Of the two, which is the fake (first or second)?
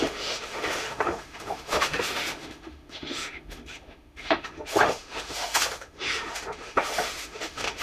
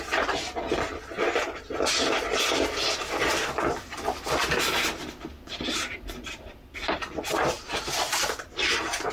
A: first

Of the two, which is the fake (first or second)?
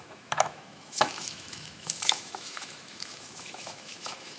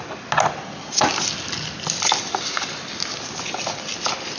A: first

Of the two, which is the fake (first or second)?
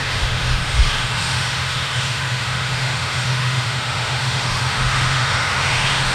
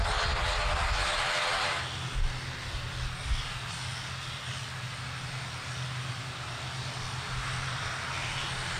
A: first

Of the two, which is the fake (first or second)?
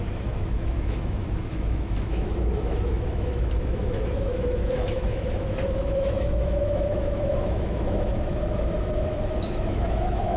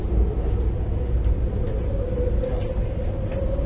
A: first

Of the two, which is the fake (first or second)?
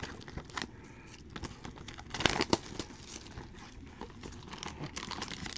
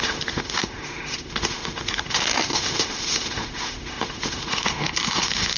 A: second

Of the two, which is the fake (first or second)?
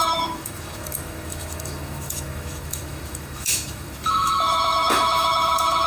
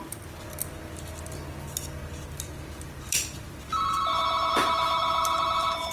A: first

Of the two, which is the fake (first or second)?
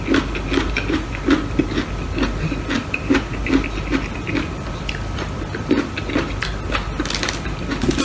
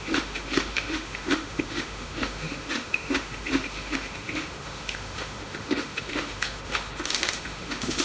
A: second